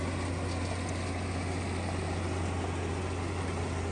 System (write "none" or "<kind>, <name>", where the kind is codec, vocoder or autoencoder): none